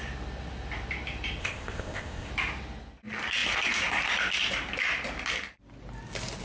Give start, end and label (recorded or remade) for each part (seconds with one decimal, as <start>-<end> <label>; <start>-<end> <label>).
0.0-1.4 recorded; 1.4-2.3 remade; 2.3-6.4 recorded